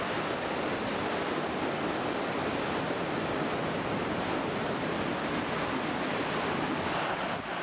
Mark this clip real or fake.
real